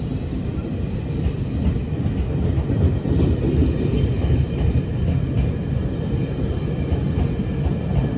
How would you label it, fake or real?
real